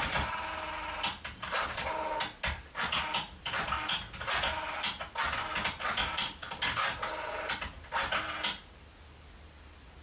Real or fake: real